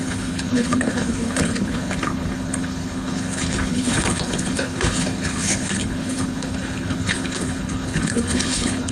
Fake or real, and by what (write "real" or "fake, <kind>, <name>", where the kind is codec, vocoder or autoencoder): fake, codec, HILCodec